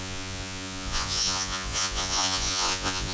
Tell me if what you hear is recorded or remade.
remade